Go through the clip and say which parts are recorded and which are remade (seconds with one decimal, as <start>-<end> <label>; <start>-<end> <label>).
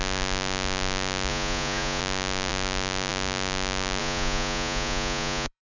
0.0-1.3 recorded; 1.3-2.0 remade; 2.0-4.0 recorded; 4.0-5.6 remade